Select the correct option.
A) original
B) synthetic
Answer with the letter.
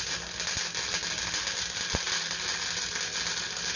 A